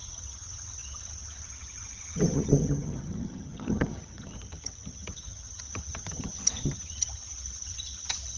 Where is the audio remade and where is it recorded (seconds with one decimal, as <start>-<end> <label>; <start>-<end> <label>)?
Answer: 0.0-8.4 remade